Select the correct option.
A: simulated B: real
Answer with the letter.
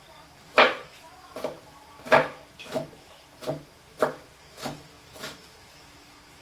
A